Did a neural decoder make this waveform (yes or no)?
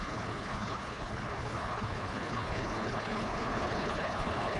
yes